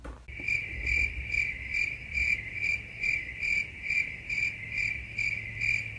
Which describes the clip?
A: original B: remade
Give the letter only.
A